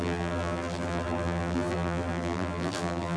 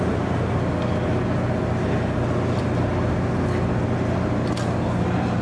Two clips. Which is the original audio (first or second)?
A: second